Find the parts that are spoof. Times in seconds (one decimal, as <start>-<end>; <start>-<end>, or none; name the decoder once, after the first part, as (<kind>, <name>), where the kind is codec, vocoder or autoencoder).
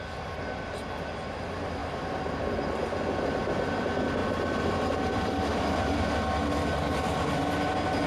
4.2-6.1 (vocoder, BigVGAN v2)